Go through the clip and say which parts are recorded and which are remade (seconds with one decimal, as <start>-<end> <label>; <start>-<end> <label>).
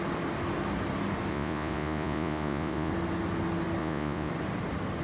0.0-1.3 recorded; 1.3-2.9 remade; 2.9-3.8 recorded; 3.8-4.3 remade; 4.3-5.0 recorded